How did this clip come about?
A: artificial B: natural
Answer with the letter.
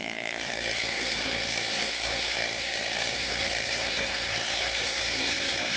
A